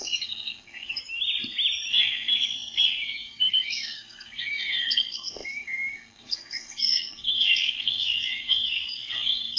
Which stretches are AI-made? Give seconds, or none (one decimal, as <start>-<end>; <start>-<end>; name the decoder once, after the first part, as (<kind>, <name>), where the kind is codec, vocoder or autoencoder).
0.0-1.0 (codec, SNAC); 1.9-9.6